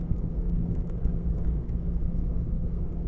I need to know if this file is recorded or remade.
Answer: remade